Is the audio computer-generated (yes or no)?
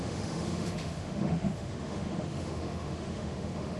yes